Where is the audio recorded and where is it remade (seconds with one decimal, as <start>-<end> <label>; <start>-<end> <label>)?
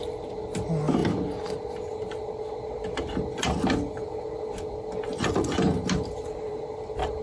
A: 0.0-7.2 recorded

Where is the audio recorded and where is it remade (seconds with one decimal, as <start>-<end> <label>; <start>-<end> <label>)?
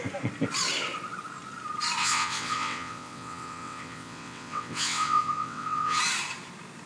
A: 0.0-2.0 recorded; 2.0-6.0 remade; 6.0-6.9 recorded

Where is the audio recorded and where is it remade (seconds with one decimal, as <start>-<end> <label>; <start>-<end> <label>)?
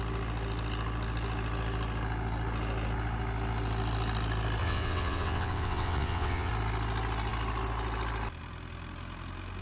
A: 0.0-4.6 recorded; 4.6-6.5 remade; 6.5-9.6 recorded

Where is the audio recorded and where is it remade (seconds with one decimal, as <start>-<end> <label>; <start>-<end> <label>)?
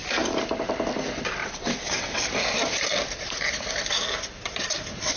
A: 0.0-1.4 recorded; 1.4-2.2 remade; 2.2-5.2 recorded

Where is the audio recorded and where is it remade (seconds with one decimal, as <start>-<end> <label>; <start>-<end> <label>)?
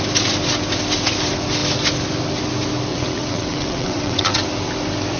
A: 0.0-2.9 recorded; 2.9-4.4 remade; 4.4-5.2 recorded